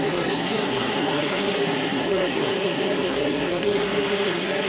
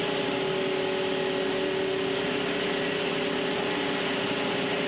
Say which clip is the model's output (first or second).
first